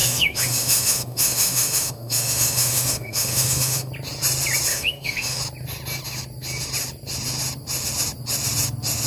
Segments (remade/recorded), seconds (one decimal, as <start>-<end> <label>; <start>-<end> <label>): 0.0-3.9 remade; 3.9-4.7 recorded; 4.7-5.4 remade; 5.4-9.1 recorded